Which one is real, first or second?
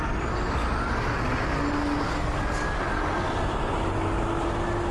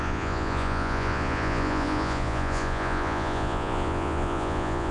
first